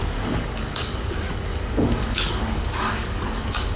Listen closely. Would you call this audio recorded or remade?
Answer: remade